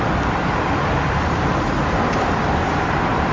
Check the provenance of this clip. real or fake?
real